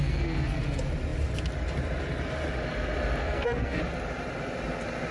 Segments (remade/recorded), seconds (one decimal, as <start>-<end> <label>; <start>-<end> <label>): 0.0-0.6 remade; 0.6-3.2 recorded; 3.2-3.8 remade; 3.8-5.1 recorded